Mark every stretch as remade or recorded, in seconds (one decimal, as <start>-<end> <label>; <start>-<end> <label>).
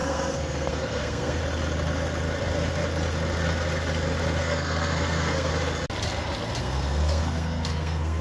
0.0-1.4 remade; 1.4-4.4 recorded; 4.4-5.5 remade; 5.5-6.6 recorded; 6.6-8.2 remade